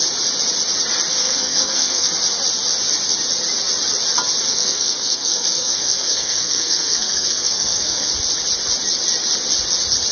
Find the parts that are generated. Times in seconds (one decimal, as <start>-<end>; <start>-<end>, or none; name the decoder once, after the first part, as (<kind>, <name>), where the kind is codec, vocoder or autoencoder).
1.2-2.1 (codec, SNAC); 4.5-8.1